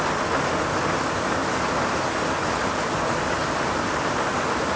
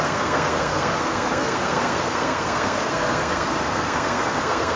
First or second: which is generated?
second